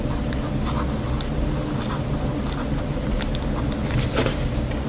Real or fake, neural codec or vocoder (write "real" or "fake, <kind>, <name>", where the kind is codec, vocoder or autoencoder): real